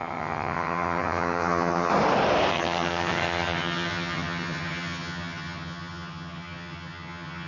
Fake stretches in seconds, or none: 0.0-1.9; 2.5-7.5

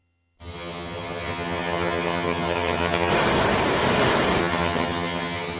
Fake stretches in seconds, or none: 0.0-3.1; 4.4-5.6

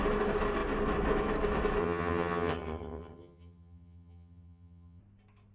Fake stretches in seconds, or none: 1.8-5.0

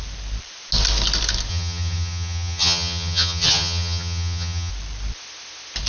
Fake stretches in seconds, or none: 1.5-4.7